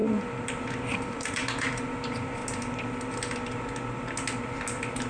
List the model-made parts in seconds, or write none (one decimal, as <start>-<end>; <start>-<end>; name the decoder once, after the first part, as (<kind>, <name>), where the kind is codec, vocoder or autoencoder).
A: 0.0-2.4 (vocoder, BigVGAN v2); 4.4-5.1